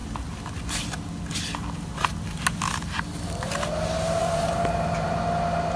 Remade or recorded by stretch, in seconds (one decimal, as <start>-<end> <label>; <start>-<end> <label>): 0.0-4.2 recorded; 4.2-5.2 remade; 5.2-5.8 recorded